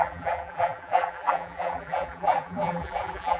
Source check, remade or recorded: remade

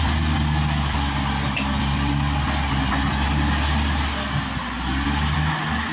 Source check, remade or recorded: recorded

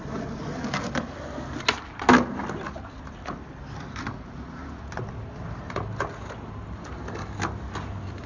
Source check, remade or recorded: recorded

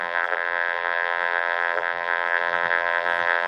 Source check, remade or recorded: remade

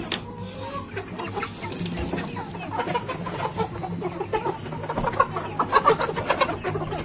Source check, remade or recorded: recorded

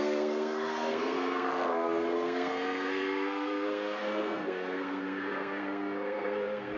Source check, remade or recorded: remade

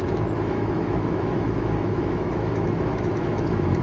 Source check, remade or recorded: remade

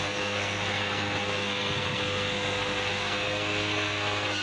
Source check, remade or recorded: remade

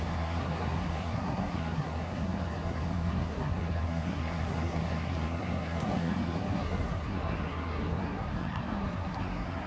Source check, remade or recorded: remade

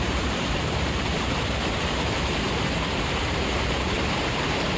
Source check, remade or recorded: remade